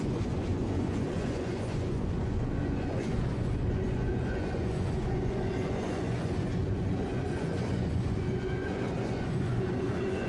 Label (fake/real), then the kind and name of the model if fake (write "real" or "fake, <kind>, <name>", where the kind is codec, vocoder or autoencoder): fake, vocoder, Vocos